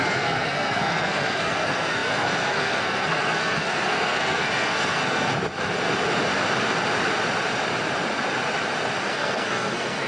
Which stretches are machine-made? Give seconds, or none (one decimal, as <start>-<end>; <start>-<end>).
0.0-5.3; 9.1-10.1